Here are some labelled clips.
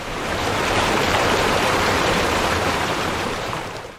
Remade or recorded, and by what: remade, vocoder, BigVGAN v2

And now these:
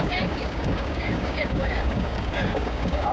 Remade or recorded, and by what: remade, codec, DAC